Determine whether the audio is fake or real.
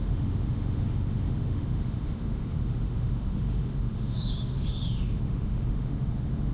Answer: fake